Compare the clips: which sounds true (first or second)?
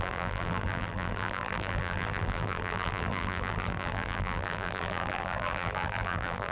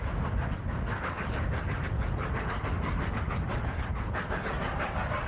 second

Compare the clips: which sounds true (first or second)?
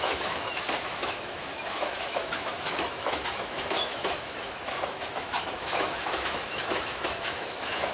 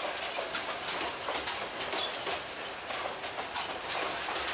second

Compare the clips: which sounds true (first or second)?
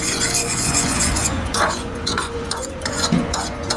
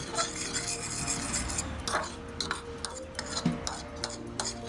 second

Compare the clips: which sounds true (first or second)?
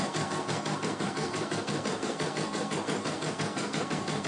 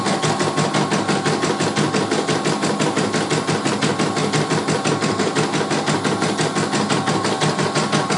second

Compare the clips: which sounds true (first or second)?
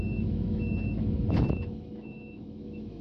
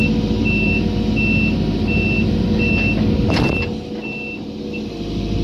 second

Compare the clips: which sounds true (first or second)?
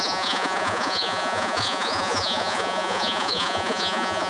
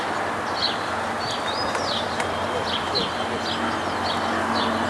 second